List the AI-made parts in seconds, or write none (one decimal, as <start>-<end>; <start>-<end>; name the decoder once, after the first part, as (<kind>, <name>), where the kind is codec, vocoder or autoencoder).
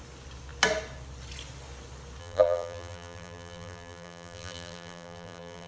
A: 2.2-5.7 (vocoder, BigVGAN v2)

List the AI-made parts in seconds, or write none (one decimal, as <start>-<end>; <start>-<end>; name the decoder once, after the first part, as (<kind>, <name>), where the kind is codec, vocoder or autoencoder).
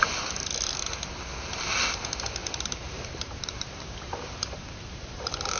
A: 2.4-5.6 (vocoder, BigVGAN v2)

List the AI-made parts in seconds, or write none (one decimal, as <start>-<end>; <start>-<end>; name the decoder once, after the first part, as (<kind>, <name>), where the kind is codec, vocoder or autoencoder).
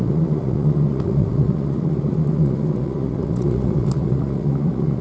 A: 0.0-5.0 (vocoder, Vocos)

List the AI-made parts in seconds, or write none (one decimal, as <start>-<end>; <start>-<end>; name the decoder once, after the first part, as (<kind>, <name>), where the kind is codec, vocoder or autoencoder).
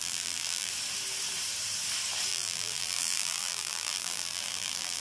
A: 0.0-0.7 (vocoder, BigVGAN v2); 2.3-5.0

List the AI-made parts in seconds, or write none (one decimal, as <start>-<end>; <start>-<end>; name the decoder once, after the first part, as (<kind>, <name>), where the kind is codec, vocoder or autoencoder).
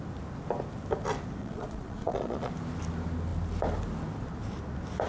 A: 1.4-2.5 (vocoder, Vocos)